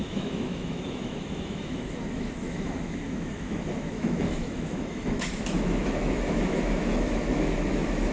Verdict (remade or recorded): remade